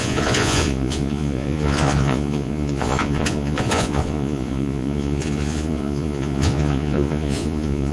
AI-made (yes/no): yes